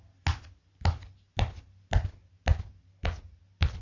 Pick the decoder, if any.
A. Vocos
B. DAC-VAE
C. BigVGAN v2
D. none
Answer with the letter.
D